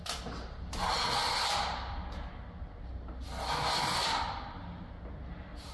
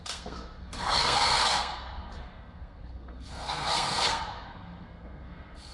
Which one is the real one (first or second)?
first